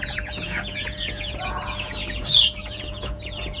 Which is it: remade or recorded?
remade